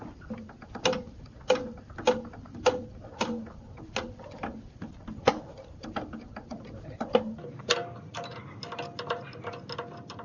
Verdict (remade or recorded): recorded